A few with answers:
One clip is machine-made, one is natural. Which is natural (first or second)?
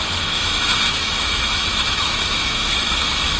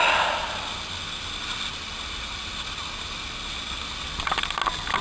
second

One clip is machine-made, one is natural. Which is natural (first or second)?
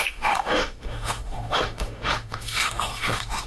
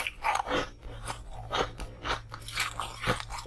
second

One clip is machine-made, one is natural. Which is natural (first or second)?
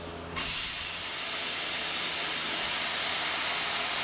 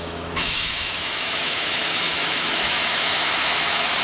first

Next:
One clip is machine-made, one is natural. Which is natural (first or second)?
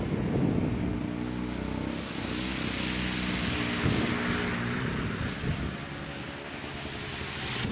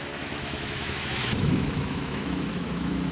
first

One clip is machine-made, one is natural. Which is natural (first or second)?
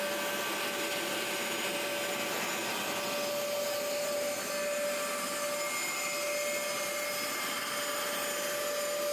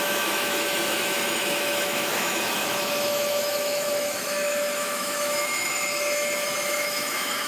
first